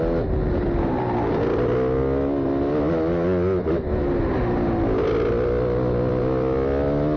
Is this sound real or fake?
real